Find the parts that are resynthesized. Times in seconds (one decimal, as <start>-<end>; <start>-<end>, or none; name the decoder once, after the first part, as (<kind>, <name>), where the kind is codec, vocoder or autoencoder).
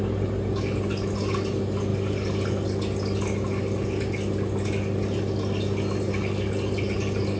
none